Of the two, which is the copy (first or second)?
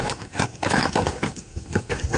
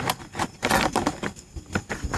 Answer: first